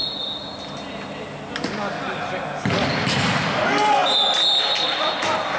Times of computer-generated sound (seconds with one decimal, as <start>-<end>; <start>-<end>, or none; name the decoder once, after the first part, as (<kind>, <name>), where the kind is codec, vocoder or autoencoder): none